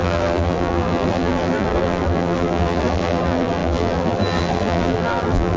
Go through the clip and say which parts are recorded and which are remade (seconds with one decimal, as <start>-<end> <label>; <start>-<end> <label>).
0.0-5.6 remade

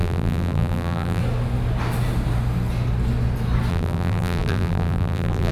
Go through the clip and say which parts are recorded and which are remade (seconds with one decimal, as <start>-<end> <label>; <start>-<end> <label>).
0.0-1.2 remade; 1.2-3.7 recorded; 3.7-5.5 remade

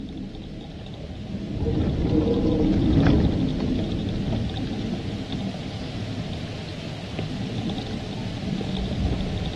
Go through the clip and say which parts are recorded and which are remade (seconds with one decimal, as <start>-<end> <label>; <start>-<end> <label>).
0.0-9.6 recorded